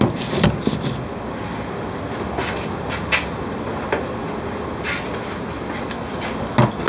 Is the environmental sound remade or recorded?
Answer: recorded